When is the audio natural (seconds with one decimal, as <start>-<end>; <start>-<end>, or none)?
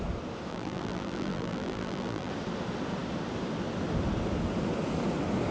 0.0-0.5; 2.3-5.5